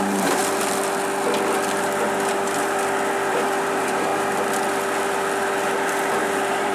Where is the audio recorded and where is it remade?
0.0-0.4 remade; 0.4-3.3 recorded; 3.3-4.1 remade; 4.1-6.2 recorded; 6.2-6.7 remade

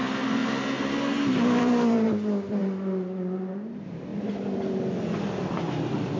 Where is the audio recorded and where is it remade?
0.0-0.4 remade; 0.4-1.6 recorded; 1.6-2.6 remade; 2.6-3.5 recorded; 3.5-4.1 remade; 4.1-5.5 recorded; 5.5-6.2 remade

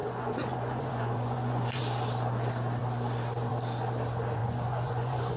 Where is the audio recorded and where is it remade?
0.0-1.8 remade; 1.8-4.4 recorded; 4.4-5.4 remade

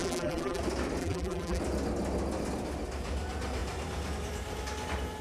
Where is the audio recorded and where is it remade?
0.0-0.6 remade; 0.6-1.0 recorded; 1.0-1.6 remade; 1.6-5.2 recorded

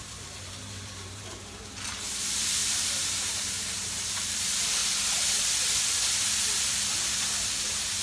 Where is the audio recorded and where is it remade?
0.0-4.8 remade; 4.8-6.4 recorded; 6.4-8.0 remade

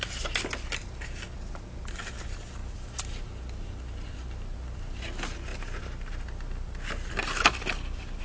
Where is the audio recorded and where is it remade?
0.0-8.2 recorded

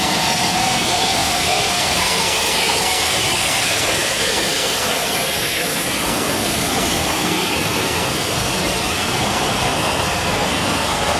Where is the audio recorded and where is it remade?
0.0-11.2 remade